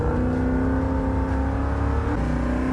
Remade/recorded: recorded